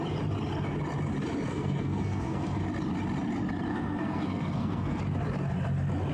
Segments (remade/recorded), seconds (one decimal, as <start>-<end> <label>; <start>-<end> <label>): 0.0-1.5 recorded; 1.5-2.6 remade; 2.6-3.7 recorded; 3.7-5.0 remade; 5.0-6.1 recorded

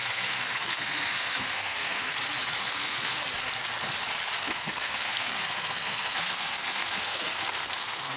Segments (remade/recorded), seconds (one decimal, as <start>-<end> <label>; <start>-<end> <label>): 0.0-2.1 remade; 2.1-2.6 recorded; 2.6-3.2 remade; 3.2-4.4 recorded; 4.4-8.2 remade

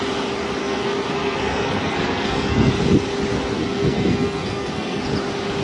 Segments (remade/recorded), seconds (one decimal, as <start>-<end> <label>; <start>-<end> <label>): 0.0-0.6 recorded; 0.6-2.7 remade; 2.7-3.3 recorded; 3.3-5.0 remade; 5.0-5.6 recorded

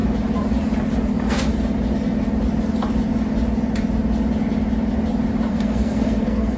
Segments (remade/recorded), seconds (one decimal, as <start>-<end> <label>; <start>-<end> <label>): 0.0-1.1 recorded; 1.1-1.5 remade; 1.5-5.5 recorded; 5.5-6.6 remade

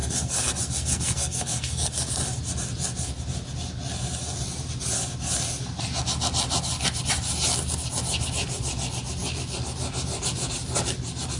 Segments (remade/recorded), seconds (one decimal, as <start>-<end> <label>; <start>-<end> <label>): 0.0-2.4 remade; 2.4-11.4 recorded

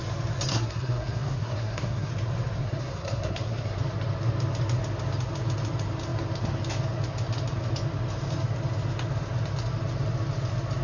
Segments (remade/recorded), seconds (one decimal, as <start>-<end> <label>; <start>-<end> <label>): 0.0-0.5 recorded; 0.5-2.1 remade; 2.1-2.6 recorded; 2.6-3.8 remade; 3.8-10.8 recorded

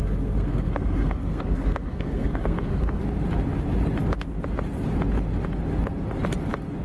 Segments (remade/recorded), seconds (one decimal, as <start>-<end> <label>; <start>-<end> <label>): 0.0-3.0 remade; 3.0-6.8 recorded

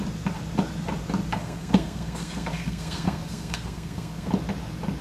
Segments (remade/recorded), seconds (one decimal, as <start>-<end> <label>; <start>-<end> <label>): 0.0-1.3 recorded; 1.3-4.3 remade; 4.3-5.0 recorded